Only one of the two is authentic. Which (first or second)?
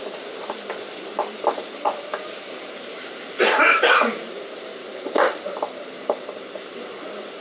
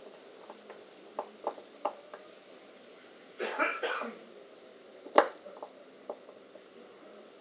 second